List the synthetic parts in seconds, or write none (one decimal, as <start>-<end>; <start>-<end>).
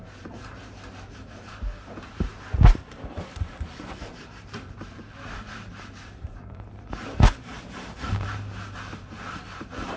0.0-2.3; 2.9-10.0